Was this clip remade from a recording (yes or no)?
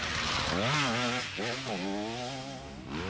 no